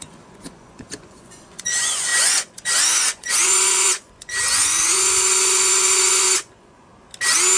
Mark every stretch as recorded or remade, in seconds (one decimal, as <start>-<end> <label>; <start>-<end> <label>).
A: 0.0-6.9 remade; 6.9-7.6 recorded

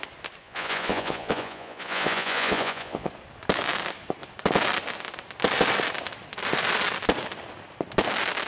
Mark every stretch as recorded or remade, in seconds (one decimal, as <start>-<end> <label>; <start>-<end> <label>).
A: 0.0-0.4 recorded; 0.4-3.1 remade; 3.1-8.5 recorded

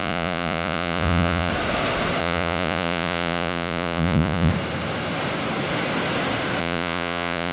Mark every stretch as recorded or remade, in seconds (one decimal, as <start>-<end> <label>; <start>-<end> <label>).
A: 0.0-1.5 remade; 1.5-2.2 recorded; 2.2-4.5 remade; 4.5-6.6 recorded; 6.6-7.5 remade